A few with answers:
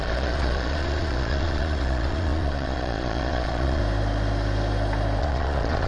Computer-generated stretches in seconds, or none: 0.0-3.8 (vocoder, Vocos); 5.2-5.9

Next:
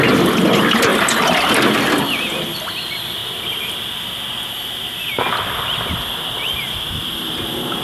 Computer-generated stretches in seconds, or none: none

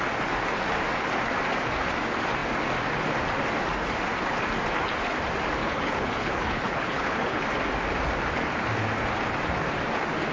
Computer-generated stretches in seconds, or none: 5.6-7.4 (codec, HILCodec)

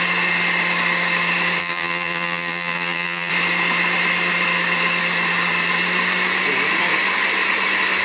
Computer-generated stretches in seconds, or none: 1.6-3.3 (vocoder, BigVGAN v2)

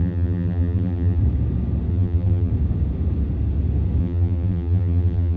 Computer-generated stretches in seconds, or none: 0.0-1.2 (vocoder, BigVGAN v2); 1.9-2.5; 4.0-5.4

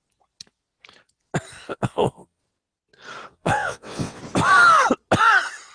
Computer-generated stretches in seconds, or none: 1.7-2.4 (vocoder, WaveNeXt); 3.3-4.2